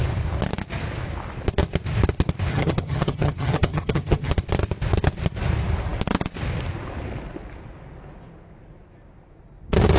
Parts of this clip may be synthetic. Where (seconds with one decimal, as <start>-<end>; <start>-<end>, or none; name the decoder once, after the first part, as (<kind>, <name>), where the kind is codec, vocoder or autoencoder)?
2.5-4.3 (vocoder, HiFi-GAN)